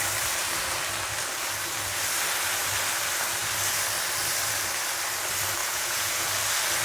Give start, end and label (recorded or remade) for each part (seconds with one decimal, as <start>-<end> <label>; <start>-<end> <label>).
0.0-5.6 recorded; 5.6-6.3 remade; 6.3-6.8 recorded